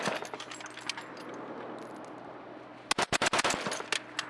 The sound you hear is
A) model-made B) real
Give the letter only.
B